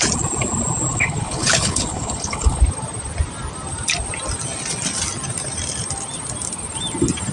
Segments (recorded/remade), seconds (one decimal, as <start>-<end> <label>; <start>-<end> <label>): 0.0-0.9 recorded; 0.9-2.6 remade; 2.6-7.3 recorded